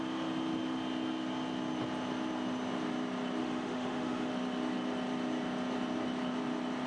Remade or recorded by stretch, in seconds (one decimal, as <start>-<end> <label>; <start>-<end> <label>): 0.0-3.4 recorded; 3.4-4.3 remade; 4.3-6.9 recorded